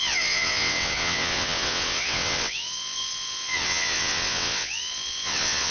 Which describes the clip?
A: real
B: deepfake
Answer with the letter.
B